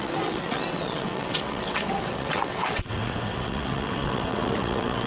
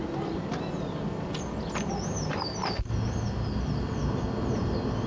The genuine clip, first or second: second